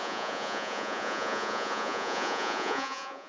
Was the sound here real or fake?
fake